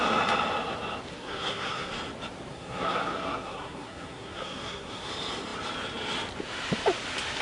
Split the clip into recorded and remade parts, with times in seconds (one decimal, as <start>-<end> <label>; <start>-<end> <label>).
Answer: 0.0-1.1 recorded; 1.1-1.9 remade; 1.9-2.5 recorded; 2.5-5.1 remade; 5.1-7.4 recorded